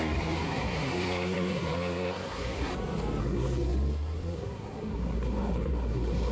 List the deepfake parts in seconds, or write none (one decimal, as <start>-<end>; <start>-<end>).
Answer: 0.0-2.7; 3.2-6.3

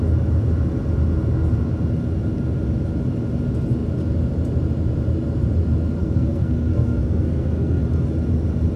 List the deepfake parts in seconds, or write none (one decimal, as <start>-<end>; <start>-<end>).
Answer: 6.0-7.8